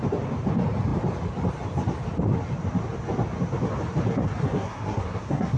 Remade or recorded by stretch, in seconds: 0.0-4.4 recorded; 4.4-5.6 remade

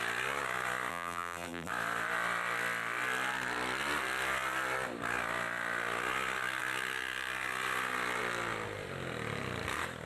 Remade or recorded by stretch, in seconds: 0.0-0.9 recorded; 0.9-1.7 remade; 1.7-10.1 recorded

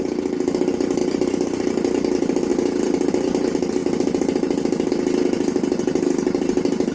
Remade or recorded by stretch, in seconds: 0.0-6.9 recorded

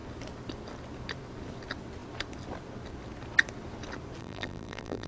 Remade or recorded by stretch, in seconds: 0.0-4.2 recorded; 4.2-5.1 remade

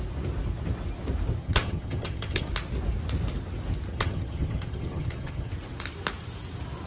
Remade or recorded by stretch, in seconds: 0.0-1.4 recorded; 1.4-2.5 remade; 2.5-3.9 recorded; 3.9-5.5 remade; 5.5-6.9 recorded

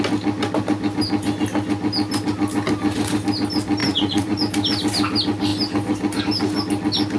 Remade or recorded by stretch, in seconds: 0.0-3.8 recorded; 3.8-4.4 remade; 4.4-7.2 recorded